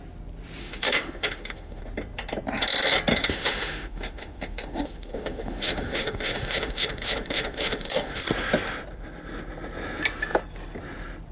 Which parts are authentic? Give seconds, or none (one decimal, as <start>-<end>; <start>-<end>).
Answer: 0.0-0.6; 1.8-3.1; 8.2-11.3

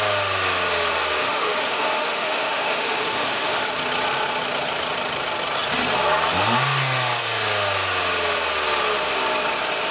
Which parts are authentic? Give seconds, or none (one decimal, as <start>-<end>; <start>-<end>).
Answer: 0.0-1.2; 3.7-9.9

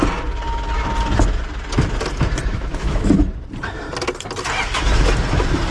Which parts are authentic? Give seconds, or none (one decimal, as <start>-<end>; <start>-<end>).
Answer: 0.0-2.5; 3.3-5.7

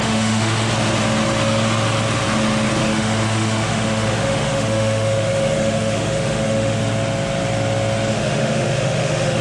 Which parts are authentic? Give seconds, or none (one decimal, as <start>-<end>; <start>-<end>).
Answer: 0.7-2.8; 6.8-8.1

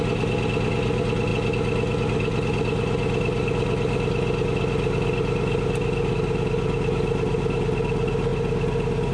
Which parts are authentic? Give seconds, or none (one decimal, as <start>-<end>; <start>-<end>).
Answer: 0.0-9.1